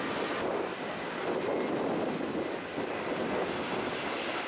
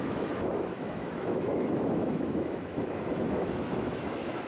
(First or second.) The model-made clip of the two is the second